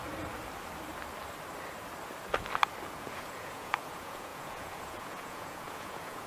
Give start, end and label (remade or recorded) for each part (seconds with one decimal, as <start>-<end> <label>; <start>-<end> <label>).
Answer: 0.0-2.9 recorded; 2.9-6.3 remade